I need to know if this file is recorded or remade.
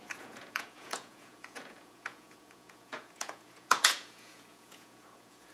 remade